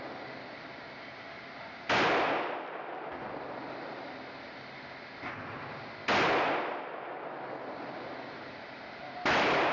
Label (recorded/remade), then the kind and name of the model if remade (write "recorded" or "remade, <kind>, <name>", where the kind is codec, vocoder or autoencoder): recorded